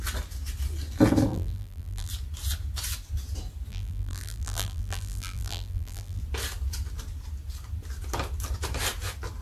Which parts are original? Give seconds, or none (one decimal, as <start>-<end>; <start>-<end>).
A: 0.0-1.3; 2.1-3.7; 6.2-9.4